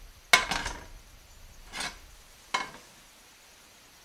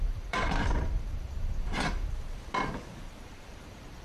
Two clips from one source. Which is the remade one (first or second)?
second